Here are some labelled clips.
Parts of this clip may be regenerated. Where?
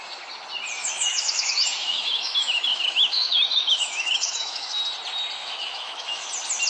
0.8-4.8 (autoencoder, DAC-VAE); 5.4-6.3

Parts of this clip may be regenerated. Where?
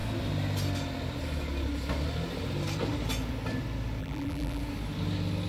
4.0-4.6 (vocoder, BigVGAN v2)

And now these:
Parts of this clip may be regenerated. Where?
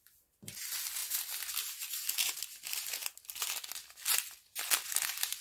none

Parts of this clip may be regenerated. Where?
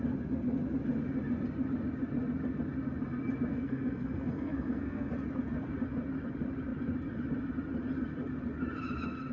3.5-5.1 (codec, SNAC)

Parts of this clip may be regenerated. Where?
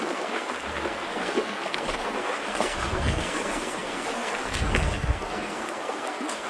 0.0-6.5 (codec, SNAC)